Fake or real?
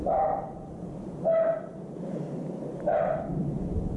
real